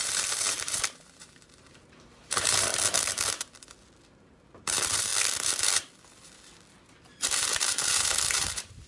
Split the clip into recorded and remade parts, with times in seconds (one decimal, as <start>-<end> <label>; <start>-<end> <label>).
0.0-2.7 remade; 2.7-4.2 recorded; 4.2-5.1 remade; 5.1-7.0 recorded; 7.0-8.9 remade